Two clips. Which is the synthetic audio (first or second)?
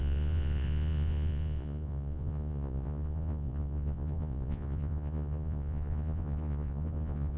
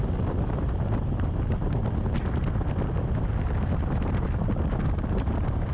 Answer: first